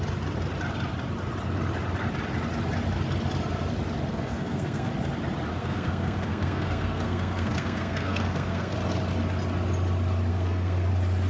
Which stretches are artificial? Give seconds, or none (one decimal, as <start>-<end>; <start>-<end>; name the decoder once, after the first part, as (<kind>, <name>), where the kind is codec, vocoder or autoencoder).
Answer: 4.1-4.9 (codec, SNAC); 5.5-8.7; 10.3-10.9